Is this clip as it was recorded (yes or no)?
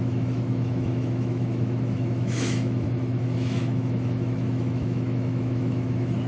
no